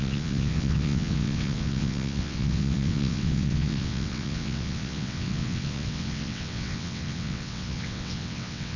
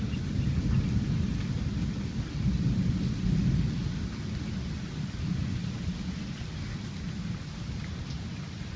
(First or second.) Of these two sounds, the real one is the second